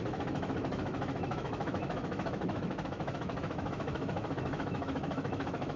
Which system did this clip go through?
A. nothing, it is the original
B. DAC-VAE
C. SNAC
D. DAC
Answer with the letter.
B